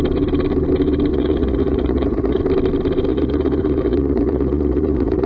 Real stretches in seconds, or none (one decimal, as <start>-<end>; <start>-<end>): 0.0-1.1; 2.4-3.1